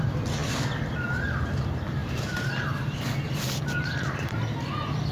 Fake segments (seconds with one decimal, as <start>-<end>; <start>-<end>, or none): none